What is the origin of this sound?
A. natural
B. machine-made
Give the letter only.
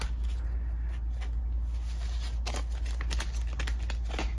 A